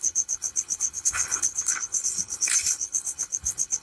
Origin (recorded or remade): remade